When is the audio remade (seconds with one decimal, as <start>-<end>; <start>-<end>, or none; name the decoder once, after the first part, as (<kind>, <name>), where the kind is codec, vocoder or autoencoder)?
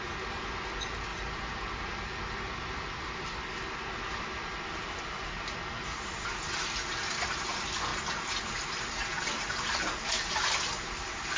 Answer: none